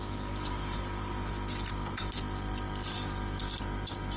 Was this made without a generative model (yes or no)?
yes